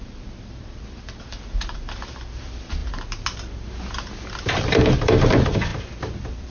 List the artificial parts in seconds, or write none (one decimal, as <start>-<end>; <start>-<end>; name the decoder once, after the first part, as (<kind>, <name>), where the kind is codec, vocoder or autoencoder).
0.0-2.8 (vocoder, BigVGAN v2); 4.6-5.7